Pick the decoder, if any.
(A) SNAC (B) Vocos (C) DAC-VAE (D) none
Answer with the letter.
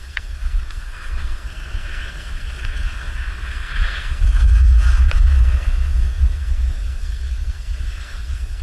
A